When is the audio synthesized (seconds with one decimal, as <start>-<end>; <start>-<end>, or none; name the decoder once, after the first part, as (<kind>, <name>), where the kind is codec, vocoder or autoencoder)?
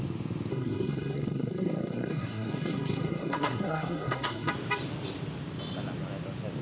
0.5-4.5 (codec, SNAC)